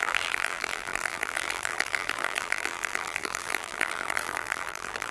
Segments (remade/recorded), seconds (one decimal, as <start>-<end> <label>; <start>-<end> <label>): 0.0-5.1 remade